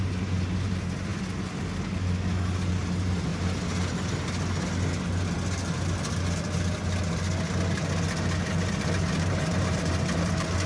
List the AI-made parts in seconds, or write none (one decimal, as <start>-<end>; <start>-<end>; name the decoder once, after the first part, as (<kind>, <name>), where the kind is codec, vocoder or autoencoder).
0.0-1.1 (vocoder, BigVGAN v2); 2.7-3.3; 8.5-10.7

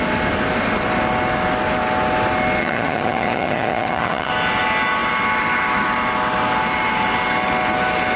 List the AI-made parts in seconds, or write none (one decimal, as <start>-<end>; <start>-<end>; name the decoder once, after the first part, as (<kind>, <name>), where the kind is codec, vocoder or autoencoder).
2.6-4.3 (vocoder, HiFi-GAN)

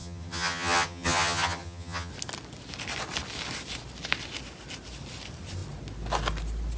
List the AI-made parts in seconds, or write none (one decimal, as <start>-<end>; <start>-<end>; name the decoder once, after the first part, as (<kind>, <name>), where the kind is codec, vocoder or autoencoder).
0.0-2.1 (vocoder, HiFi-GAN)